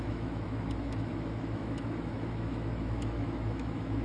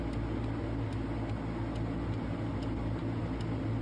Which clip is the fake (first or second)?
first